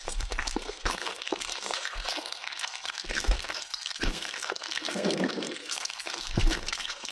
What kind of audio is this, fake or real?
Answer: fake